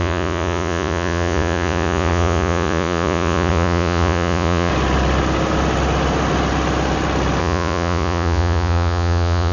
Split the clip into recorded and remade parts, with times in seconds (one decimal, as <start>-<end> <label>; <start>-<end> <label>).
0.0-4.7 remade; 4.7-7.4 recorded; 7.4-9.5 remade